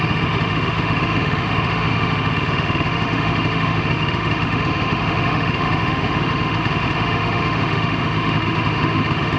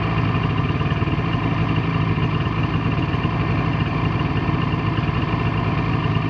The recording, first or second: second